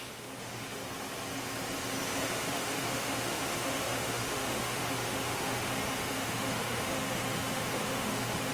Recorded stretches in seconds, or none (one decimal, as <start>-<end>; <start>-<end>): 0.8-2.4

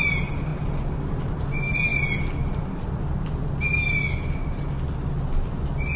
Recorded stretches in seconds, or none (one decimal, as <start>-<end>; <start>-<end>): 0.0-6.0

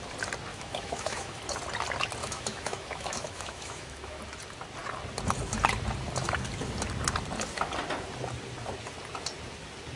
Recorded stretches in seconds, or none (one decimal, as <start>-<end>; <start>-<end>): 0.0-0.5; 1.4-2.2; 4.2-10.0

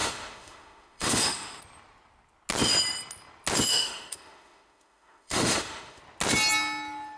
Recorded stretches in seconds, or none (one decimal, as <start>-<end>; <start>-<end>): 1.6-3.7; 6.0-7.2

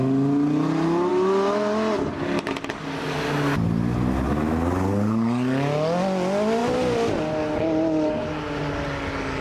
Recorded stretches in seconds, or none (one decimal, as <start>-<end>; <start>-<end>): 0.0-9.4